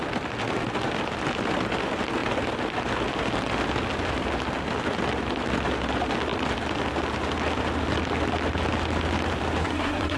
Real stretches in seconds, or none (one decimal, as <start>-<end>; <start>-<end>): 0.0-9.6